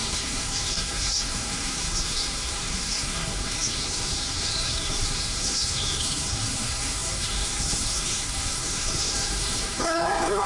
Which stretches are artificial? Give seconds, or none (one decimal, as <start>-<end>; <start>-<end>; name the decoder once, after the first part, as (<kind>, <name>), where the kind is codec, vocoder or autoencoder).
0.0-10.5 (codec, SNAC)